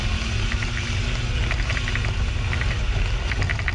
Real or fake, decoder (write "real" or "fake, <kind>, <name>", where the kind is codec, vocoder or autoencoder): real